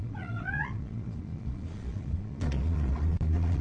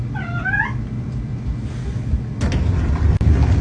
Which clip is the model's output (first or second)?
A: first